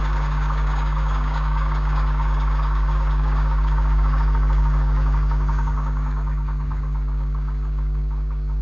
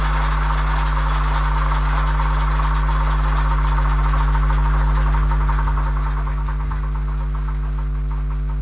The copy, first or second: first